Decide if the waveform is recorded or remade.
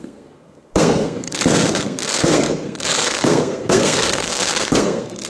remade